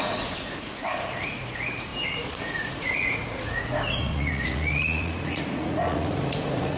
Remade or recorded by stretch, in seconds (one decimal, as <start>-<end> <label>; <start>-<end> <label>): 0.0-6.8 remade